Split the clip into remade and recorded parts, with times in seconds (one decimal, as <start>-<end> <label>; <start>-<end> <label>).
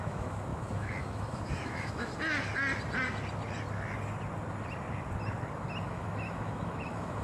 0.0-2.1 remade; 2.1-5.8 recorded; 5.8-7.2 remade